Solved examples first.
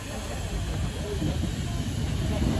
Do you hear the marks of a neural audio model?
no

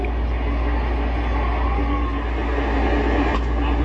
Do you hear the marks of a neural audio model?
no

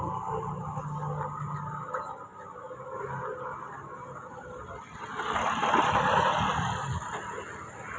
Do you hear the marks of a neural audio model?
no